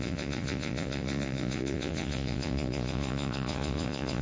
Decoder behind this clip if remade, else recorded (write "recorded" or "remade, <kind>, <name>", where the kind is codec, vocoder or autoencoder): remade, vocoder, Vocos